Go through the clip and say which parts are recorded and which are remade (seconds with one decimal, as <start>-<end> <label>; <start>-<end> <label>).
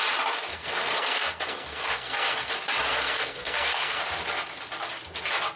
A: 0.0-0.5 recorded; 0.5-2.5 remade; 2.5-2.9 recorded; 2.9-4.0 remade; 4.0-5.6 recorded